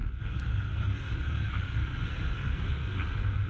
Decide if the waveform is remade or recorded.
remade